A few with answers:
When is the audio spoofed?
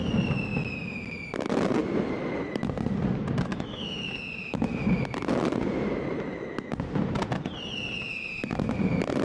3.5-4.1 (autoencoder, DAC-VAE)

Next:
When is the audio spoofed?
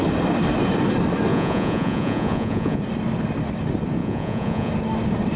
1.3-2.8 (vocoder, Vocos); 4.0-4.7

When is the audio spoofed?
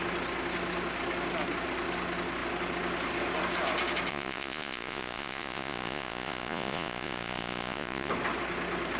4.1-8.1 (vocoder, Vocos)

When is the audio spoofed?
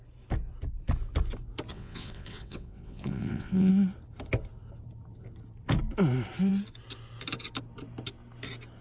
1.7-3.7 (vocoder, WaveNeXt)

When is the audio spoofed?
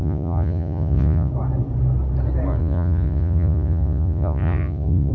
0.0-1.3 (vocoder, Vocos); 2.6-5.1